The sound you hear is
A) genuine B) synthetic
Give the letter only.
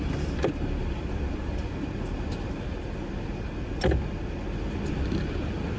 A